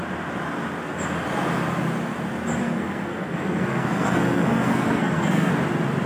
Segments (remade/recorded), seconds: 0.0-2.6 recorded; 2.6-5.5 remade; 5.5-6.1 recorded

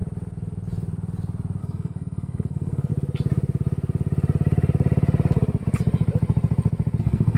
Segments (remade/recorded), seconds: 0.0-1.6 recorded; 1.6-2.9 remade; 2.9-7.0 recorded; 7.0-7.4 remade

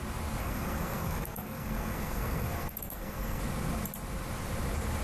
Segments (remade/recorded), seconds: 0.0-0.4 recorded; 0.4-3.4 remade; 3.4-5.0 recorded

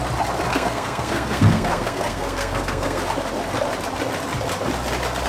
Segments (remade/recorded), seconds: 0.0-0.5 recorded; 0.5-3.0 remade; 3.0-5.3 recorded

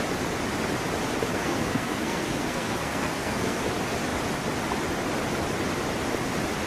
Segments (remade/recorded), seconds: 0.0-1.3 recorded; 1.3-3.6 remade; 3.6-6.7 recorded

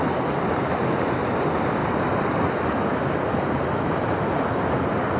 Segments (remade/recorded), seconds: 0.0-5.2 recorded